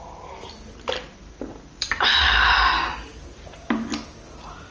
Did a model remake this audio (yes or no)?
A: no